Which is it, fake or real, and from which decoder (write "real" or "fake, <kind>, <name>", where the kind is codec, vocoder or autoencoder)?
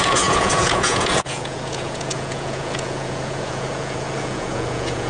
fake, vocoder, Vocos